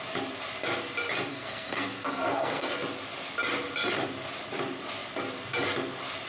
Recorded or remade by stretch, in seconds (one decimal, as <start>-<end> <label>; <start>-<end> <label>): 0.0-1.3 recorded; 1.3-2.7 remade; 2.7-6.3 recorded